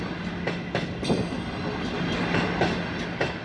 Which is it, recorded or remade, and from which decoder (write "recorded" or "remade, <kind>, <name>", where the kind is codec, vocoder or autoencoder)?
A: recorded